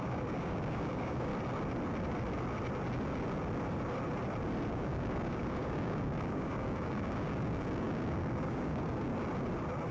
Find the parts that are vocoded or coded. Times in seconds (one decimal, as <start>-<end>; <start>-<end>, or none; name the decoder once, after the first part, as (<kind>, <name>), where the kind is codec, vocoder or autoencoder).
0.0-1.3 (codec, DAC); 4.7-9.1